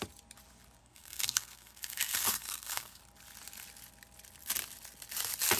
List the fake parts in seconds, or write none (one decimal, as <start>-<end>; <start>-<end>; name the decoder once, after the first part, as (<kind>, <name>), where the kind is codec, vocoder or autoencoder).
0.8-3.0 (codec, SNAC)